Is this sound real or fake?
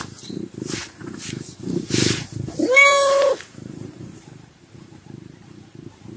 fake